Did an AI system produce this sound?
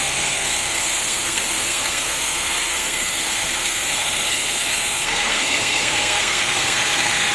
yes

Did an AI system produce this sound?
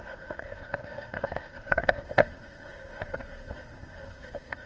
yes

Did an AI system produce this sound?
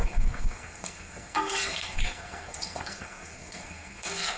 yes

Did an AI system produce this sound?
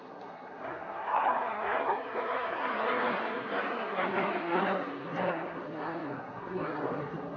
yes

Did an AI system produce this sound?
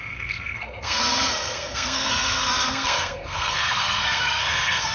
yes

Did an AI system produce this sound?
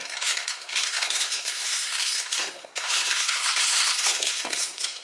yes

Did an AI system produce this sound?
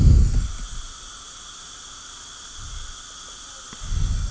no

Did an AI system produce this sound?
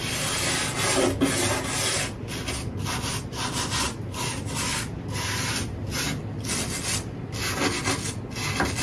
no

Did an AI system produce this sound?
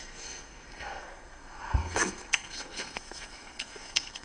yes